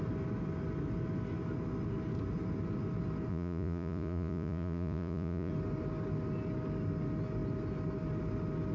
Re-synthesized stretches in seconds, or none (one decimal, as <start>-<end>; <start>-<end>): 3.3-5.5

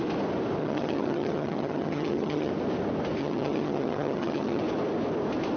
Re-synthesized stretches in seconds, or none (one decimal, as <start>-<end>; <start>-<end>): 0.6-2.5; 3.2-4.6

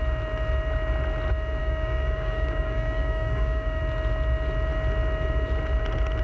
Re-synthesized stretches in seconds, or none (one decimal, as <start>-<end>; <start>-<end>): 1.6-3.8

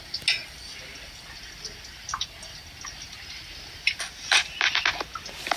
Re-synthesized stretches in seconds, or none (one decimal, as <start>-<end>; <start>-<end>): none

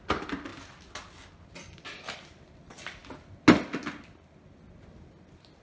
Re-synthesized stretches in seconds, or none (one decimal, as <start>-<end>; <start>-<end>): none

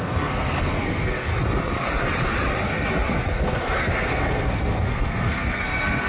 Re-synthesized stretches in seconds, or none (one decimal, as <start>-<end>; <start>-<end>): 0.0-1.3; 3.3-6.1